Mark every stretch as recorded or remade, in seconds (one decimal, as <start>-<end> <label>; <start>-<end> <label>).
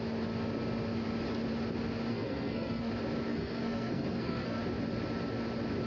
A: 0.0-2.1 recorded; 2.1-2.9 remade; 2.9-3.3 recorded; 3.3-4.6 remade; 4.6-5.9 recorded